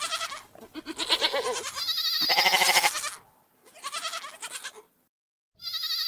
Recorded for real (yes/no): yes